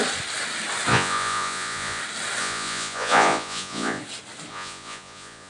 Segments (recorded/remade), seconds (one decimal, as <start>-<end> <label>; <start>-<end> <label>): 0.0-0.9 recorded; 0.9-2.0 remade; 2.0-2.4 recorded; 2.4-4.0 remade; 4.0-4.5 recorded; 4.5-5.5 remade